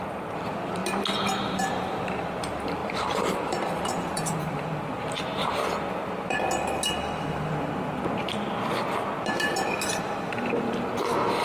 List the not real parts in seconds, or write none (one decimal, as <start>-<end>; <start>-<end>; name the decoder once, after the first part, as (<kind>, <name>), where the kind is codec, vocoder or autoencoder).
0.0-0.8 (vocoder, BigVGAN v2); 1.4-5.6; 9.9-11.4